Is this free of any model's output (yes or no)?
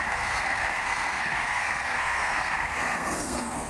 no